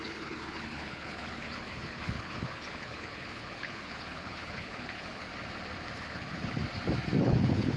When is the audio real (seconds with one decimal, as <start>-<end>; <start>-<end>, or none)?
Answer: 5.3-6.0; 6.6-7.2

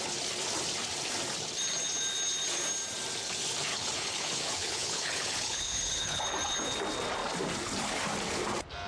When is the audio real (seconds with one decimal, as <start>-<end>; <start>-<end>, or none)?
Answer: 0.0-3.7; 6.2-8.9